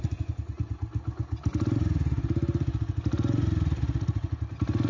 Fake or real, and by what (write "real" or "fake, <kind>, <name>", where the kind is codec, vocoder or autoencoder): real